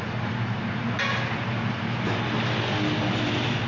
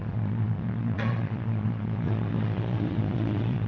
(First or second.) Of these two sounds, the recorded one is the first